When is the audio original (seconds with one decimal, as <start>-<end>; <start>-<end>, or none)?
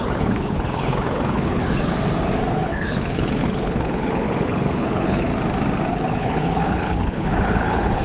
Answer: 1.6-2.5; 5.3-5.9